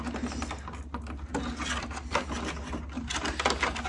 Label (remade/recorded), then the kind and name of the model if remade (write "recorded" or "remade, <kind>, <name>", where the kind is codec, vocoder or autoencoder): recorded